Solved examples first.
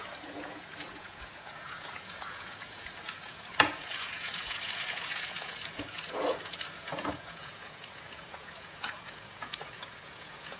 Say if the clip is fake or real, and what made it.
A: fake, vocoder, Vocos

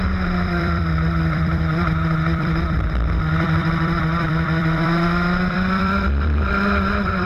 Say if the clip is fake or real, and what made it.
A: fake, vocoder, BigVGAN v2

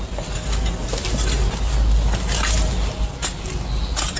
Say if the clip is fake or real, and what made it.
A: real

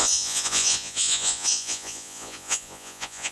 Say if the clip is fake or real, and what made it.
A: fake, vocoder, Vocos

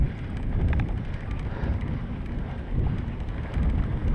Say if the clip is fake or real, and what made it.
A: real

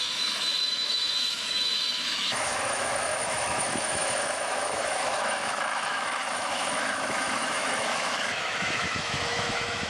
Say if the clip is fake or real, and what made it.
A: fake, autoencoder, DAC-VAE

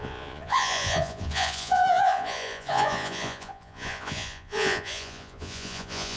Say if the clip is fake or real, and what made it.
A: fake, vocoder, Vocos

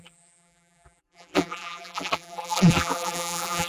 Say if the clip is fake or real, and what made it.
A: fake, vocoder, BigVGAN v2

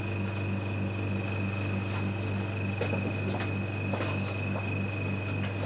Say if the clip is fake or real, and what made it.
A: real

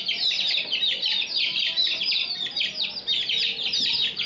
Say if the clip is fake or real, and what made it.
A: real